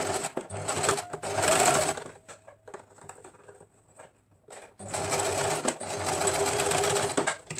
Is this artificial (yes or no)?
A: no